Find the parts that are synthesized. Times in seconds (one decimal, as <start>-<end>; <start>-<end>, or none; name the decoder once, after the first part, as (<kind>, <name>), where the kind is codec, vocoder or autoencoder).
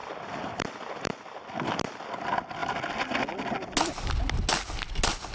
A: none